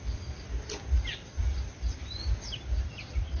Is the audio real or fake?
real